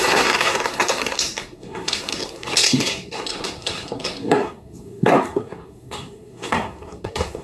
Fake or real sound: fake